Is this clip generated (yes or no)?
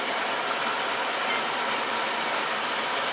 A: no